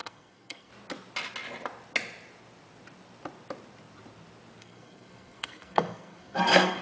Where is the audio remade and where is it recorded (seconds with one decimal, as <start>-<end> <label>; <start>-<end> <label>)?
0.0-0.7 remade; 0.7-4.6 recorded; 4.6-6.8 remade